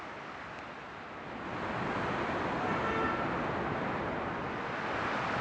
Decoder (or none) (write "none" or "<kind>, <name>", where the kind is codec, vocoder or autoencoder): none